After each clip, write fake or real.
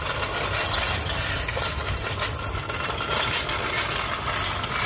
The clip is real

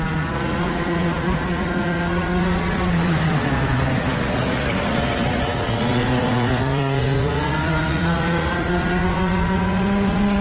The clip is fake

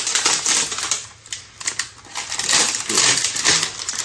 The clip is real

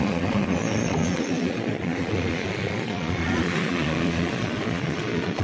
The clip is fake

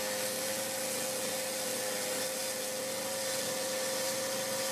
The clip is real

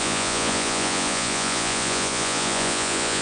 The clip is fake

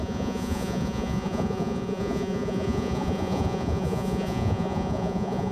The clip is fake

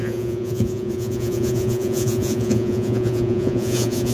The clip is fake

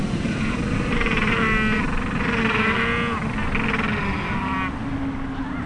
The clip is real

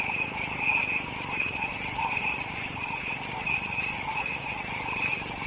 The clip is fake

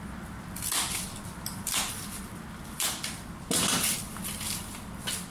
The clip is real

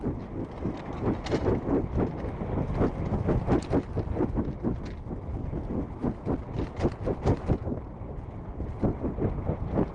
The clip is real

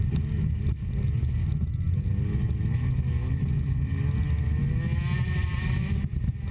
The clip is real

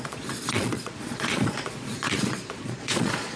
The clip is fake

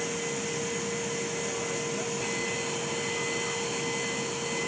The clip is real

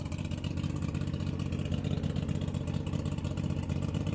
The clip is real